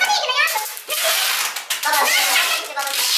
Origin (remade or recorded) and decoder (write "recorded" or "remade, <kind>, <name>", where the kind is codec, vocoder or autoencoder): recorded